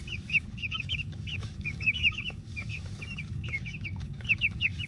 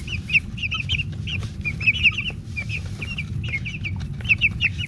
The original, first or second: second